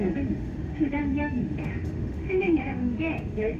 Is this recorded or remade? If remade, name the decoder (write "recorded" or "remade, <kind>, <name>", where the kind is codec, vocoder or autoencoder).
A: remade, autoencoder, DAC-VAE